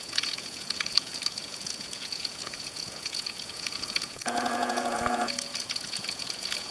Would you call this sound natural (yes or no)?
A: no